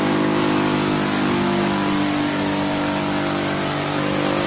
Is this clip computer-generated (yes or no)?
no